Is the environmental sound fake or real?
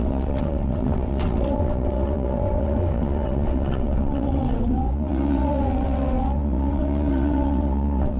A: fake